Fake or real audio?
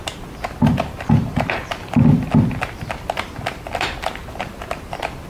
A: real